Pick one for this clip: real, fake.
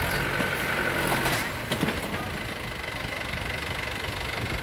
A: real